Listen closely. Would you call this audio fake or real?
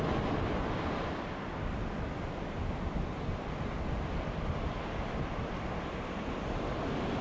real